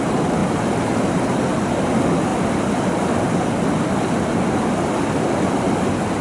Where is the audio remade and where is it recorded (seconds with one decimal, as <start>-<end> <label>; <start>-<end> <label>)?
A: 0.0-6.2 recorded